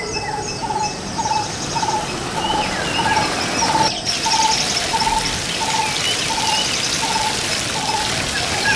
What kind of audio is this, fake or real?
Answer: real